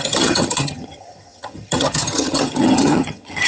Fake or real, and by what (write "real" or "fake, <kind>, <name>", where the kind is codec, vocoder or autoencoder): fake, vocoder, HiFi-GAN